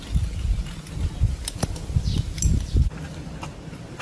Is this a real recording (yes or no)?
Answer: yes